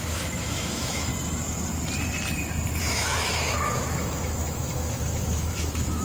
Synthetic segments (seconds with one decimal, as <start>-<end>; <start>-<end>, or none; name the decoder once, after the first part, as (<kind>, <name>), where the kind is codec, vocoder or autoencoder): 0.0-1.1 (autoencoder, DAC-VAE); 2.8-6.0